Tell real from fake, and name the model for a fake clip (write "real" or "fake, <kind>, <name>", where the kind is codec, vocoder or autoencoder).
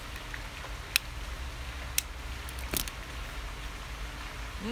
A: real